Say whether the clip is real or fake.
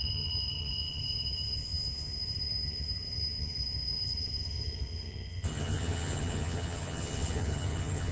fake